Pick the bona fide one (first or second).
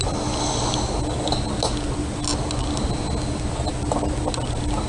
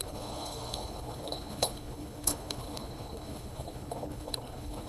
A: first